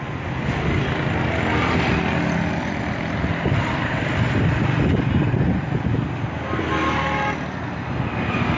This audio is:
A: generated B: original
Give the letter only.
B